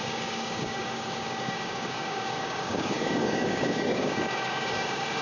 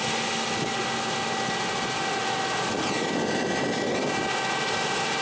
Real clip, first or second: second